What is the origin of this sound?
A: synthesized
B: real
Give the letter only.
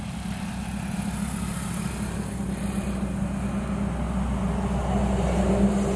B